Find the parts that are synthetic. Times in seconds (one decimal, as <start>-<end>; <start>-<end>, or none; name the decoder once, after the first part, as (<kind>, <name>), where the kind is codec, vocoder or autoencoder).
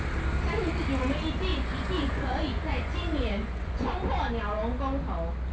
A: 1.5-4.0 (vocoder, Vocos)